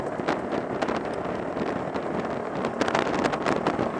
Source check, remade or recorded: recorded